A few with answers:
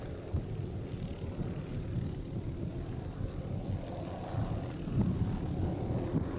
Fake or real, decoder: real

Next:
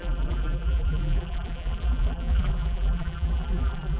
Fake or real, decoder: fake, vocoder, BigVGAN v2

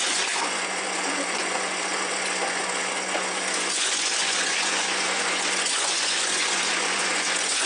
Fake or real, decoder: fake, vocoder, Vocos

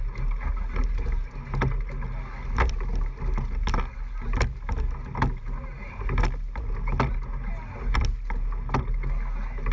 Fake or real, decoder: real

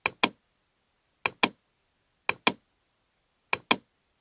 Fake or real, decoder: real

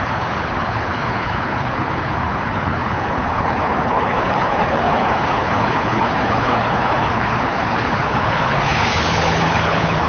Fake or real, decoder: fake, codec, HILCodec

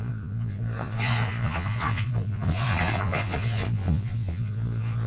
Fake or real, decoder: fake, vocoder, Vocos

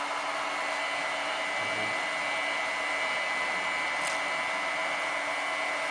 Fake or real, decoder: real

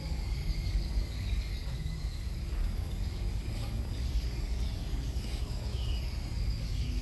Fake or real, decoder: fake, codec, DAC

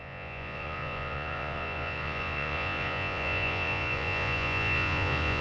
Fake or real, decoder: fake, vocoder, Vocos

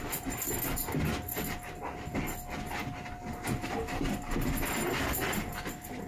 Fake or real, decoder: real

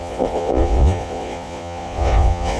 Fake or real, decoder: fake, vocoder, Vocos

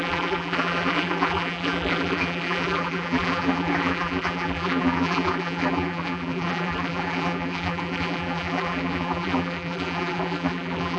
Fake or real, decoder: fake, vocoder, BigVGAN v2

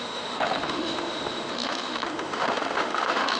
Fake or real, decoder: fake, autoencoder, DAC-VAE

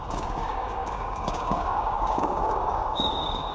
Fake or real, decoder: fake, codec, DAC